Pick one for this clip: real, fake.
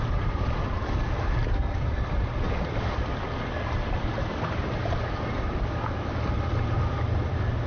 real